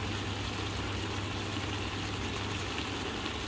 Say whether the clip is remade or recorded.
recorded